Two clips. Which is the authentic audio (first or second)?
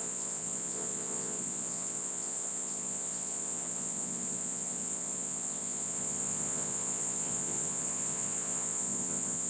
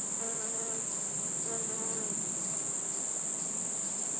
second